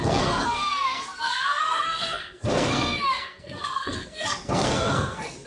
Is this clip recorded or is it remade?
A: remade